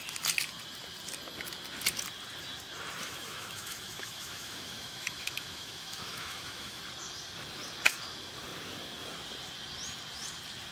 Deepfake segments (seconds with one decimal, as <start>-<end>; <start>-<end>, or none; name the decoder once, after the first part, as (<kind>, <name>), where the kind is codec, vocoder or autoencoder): 3.0-6.8 (autoencoder, DAC-VAE)